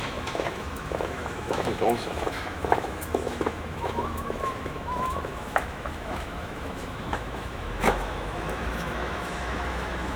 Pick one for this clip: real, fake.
fake